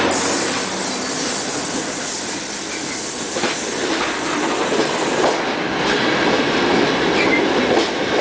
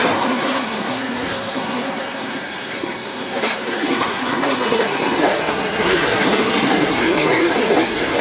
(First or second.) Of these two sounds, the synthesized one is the second